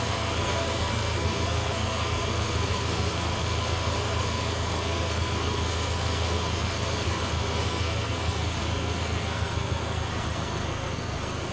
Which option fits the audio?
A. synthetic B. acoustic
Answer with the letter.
A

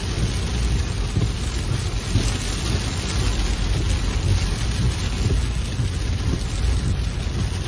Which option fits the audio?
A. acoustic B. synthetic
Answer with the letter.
A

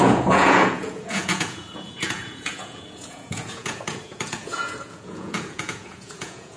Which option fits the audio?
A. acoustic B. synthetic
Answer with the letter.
B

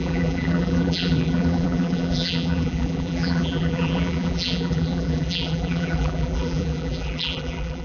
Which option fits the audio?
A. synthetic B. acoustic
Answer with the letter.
A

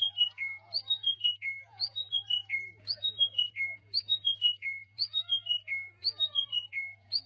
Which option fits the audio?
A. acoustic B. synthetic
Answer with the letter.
B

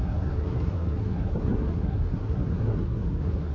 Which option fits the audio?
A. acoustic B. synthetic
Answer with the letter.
B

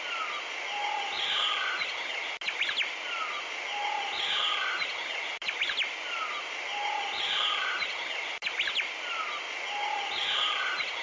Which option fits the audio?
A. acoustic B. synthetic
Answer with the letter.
A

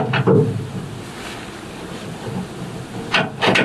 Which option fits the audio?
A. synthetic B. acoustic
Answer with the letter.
B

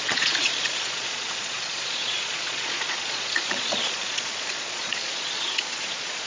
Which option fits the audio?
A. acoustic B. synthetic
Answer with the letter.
B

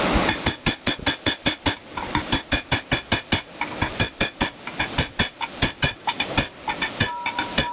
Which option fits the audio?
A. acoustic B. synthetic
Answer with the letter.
A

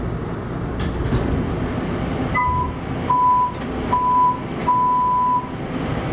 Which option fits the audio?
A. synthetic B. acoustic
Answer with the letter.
B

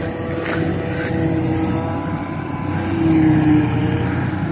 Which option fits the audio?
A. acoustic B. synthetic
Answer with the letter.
A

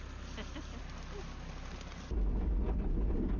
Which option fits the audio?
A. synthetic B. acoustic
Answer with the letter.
B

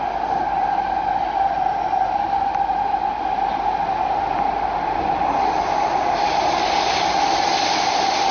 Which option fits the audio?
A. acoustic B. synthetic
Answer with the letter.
A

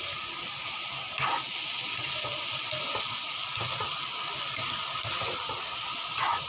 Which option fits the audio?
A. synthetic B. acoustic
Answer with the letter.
B